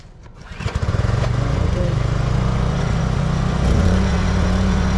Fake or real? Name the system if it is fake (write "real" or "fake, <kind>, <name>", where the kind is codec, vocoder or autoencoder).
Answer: fake, vocoder, Vocos